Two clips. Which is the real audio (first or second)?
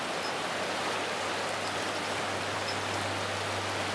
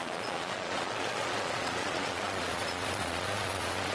first